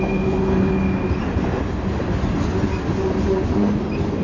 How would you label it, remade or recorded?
recorded